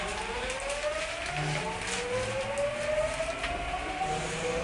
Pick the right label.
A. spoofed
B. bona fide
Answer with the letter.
B